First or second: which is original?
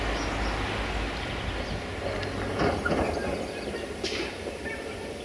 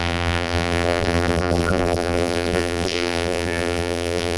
first